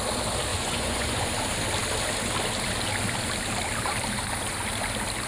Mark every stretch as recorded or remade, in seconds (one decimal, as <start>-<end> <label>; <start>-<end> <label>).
0.0-0.5 recorded; 0.5-1.3 remade; 1.3-5.3 recorded